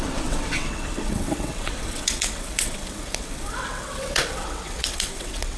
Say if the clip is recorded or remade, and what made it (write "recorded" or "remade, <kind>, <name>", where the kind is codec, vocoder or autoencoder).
remade, vocoder, WaveNeXt